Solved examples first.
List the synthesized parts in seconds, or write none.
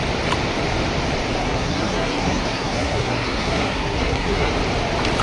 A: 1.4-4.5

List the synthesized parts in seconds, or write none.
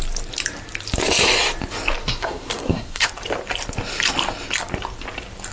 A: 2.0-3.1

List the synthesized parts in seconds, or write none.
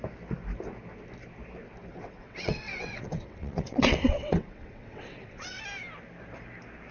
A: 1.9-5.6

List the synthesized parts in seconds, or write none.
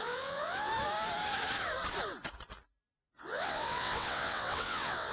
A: 0.0-0.7; 3.2-5.1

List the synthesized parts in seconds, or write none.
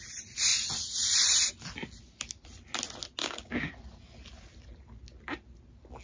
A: 3.2-3.7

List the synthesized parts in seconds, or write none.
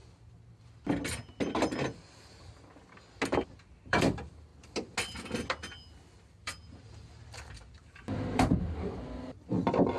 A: 3.5-4.5; 6.0-10.0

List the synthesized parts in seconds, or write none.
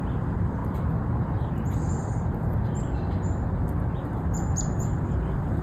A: 0.0-0.6; 4.0-5.6